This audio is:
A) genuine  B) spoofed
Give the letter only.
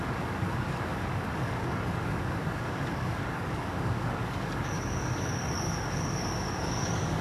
B